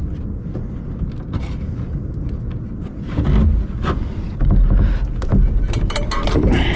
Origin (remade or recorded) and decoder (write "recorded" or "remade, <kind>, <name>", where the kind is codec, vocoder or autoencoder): recorded